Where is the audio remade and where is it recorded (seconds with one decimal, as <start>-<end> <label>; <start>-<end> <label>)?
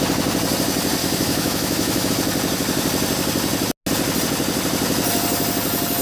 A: 0.0-1.0 recorded; 1.0-2.1 remade; 2.1-6.0 recorded